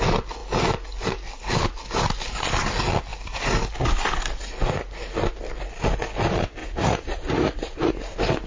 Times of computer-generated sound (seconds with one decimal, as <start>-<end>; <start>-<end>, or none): 6.6-7.9